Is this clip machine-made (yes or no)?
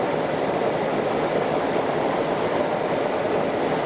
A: no